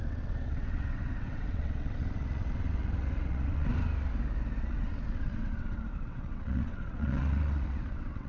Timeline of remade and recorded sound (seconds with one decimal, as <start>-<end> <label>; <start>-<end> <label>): 0.0-3.7 remade; 3.7-4.6 recorded; 4.6-8.3 remade